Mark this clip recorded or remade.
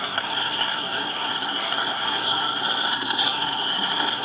remade